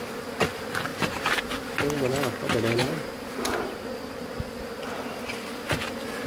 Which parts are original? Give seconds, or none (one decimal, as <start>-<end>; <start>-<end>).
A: 0.0-0.9; 1.4-2.8; 3.5-6.3